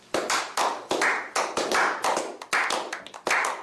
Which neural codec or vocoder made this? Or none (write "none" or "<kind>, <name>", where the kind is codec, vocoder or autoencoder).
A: none